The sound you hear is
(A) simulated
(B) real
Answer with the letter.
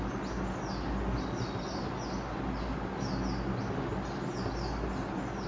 B